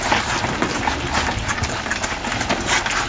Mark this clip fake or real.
real